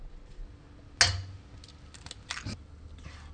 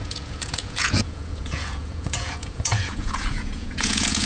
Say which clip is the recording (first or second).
first